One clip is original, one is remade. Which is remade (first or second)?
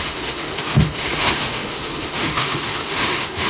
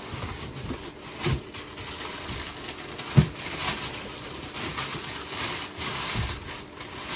first